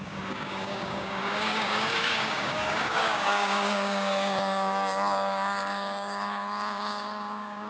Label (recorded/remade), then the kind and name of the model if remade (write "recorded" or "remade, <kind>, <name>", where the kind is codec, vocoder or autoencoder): remade, codec, DAC